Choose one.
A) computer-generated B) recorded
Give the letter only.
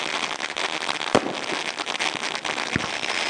B